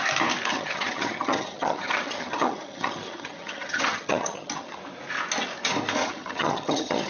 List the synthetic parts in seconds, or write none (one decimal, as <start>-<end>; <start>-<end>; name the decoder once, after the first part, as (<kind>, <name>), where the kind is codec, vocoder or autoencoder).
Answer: 0.5-4.8 (vocoder, HiFi-GAN); 6.0-7.1